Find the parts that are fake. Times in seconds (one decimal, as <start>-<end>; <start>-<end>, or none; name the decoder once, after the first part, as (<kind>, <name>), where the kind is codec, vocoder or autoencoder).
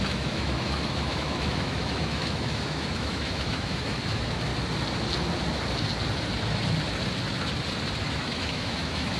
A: 0.0-4.5 (autoencoder, DAC-VAE); 8.1-9.2